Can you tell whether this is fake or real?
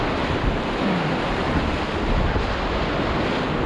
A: real